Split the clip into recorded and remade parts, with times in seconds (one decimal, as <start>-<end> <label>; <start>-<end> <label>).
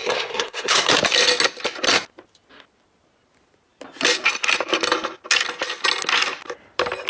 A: 0.0-0.9 remade; 0.9-7.1 recorded